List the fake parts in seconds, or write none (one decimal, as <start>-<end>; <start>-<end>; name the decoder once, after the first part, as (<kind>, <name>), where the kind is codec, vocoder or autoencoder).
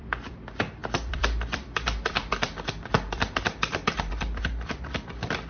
0.0-5.5 (vocoder, BigVGAN v2)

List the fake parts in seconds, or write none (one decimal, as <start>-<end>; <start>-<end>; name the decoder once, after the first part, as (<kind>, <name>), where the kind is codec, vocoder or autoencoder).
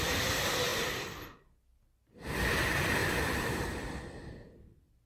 3.0-4.0 (vocoder, BigVGAN v2)